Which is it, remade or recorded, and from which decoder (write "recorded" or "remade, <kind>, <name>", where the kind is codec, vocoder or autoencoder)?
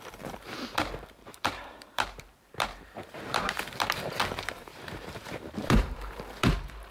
remade, vocoder, BigVGAN v2